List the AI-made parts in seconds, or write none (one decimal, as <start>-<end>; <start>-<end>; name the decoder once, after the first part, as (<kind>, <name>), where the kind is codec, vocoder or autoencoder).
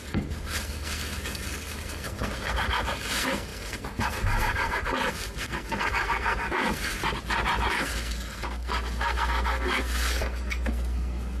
0.0-7.0 (codec, SNAC); 7.7-11.4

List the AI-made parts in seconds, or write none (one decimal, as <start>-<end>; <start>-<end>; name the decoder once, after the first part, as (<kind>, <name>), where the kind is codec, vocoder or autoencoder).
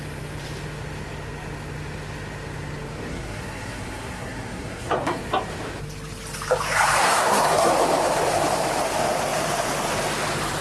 3.1-5.2 (codec, SNAC); 7.0-7.7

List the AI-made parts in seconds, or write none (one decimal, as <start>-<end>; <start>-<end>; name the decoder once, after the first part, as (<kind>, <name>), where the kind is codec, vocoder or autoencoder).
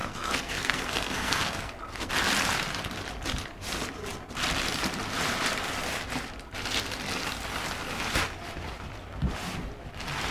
0.0-2.1 (codec, SNAC)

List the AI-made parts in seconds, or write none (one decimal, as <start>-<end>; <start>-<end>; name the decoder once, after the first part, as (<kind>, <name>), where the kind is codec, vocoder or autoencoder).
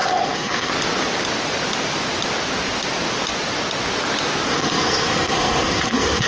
0.0-0.7 (codec, SNAC); 4.5-6.3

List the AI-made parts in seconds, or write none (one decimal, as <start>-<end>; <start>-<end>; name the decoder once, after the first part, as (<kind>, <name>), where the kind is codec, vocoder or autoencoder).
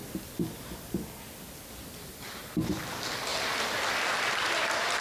none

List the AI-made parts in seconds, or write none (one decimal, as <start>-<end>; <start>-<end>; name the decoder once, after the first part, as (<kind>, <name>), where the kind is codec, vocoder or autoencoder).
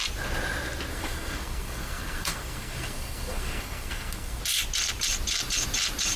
0.9-4.4 (codec, SNAC)